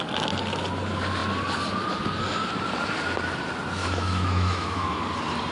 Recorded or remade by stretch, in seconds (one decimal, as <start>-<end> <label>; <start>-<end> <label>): 0.0-3.8 recorded; 3.8-5.0 remade; 5.0-5.5 recorded